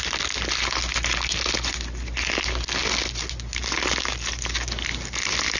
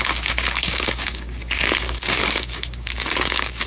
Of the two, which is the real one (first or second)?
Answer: first